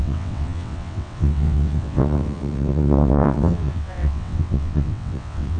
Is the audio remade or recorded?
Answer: remade